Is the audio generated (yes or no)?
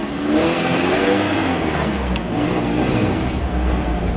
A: yes